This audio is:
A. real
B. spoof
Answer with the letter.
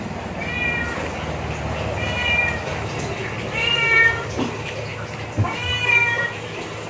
A